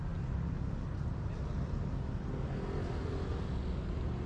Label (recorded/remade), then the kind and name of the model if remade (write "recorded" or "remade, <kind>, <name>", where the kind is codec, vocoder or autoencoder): recorded